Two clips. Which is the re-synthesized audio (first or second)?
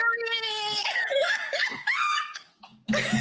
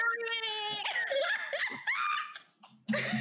first